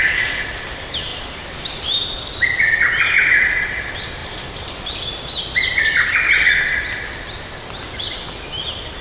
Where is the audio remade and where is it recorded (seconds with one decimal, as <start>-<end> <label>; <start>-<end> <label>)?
0.0-1.1 recorded; 1.1-2.5 remade; 2.5-9.0 recorded